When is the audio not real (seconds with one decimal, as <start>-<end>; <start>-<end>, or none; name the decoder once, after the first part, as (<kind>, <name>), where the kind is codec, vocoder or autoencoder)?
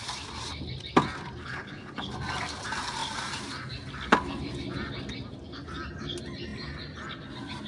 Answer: 1.4-2.1 (codec, HILCodec)